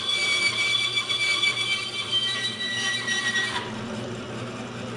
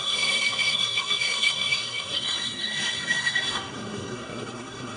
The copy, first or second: second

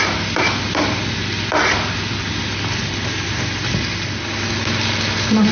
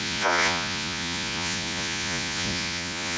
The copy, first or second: second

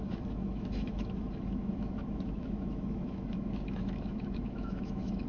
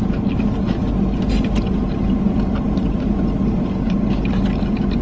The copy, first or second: first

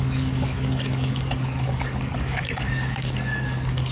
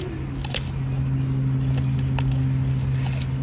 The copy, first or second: first